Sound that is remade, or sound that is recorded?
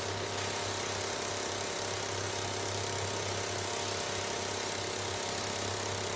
recorded